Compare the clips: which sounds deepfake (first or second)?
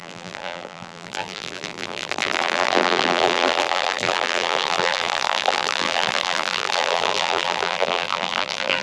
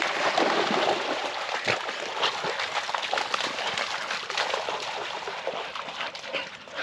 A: first